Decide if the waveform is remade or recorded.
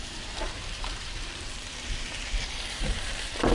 remade